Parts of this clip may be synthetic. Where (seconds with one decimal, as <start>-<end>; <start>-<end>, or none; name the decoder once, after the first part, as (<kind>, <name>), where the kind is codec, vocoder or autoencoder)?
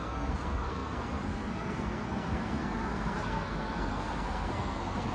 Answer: 0.0-5.1 (codec, SNAC)